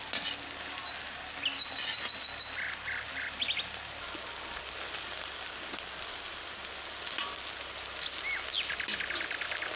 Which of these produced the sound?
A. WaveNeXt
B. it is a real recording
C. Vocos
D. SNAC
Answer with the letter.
B